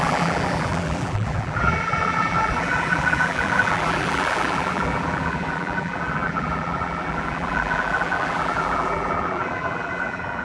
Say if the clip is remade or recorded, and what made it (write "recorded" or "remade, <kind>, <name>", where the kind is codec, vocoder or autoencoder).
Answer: remade, vocoder, BigVGAN v2